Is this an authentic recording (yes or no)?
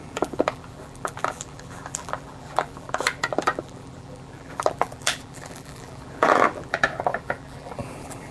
no